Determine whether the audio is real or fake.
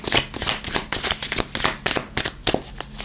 real